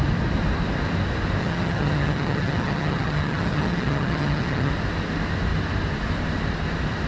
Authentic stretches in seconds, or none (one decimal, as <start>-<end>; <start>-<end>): 0.0-1.4; 4.7-7.1

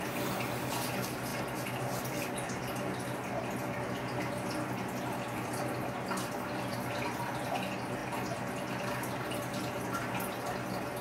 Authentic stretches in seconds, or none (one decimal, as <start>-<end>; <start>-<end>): 0.0-11.0

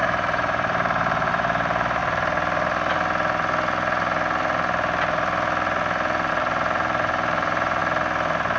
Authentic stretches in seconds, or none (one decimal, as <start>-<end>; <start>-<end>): 2.0-6.3; 7.8-8.6

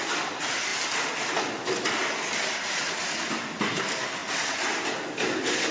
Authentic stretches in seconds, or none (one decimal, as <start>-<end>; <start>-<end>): 0.0-5.7

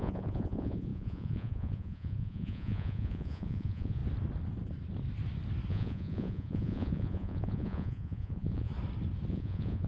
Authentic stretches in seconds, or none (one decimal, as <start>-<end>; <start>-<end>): 4.0-5.7; 8.7-9.3

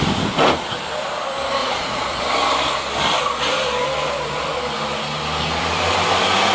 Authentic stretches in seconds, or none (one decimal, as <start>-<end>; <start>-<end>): 0.0-1.6; 2.2-6.5

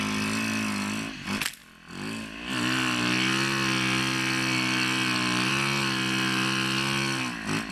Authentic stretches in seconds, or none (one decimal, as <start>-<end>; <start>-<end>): 0.0-7.7